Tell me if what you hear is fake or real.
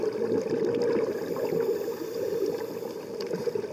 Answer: real